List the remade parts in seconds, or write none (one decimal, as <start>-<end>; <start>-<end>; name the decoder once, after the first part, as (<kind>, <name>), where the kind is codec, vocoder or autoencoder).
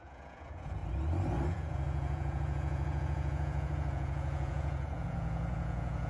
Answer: 0.0-0.8 (vocoder, Vocos); 1.5-6.1